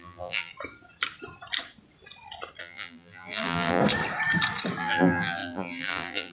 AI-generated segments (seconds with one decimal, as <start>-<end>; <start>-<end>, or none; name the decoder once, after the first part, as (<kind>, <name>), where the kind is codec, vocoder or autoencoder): 0.0-0.5 (vocoder, BigVGAN v2); 2.6-3.8; 4.8-6.3